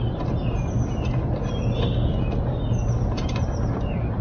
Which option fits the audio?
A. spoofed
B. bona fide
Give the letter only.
B